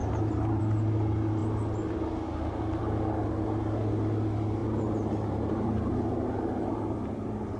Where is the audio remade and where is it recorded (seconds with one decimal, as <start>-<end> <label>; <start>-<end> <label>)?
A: 0.0-0.6 remade; 0.6-4.6 recorded; 4.6-5.9 remade; 5.9-7.6 recorded